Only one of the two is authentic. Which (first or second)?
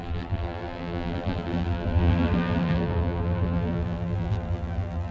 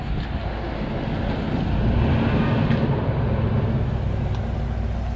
second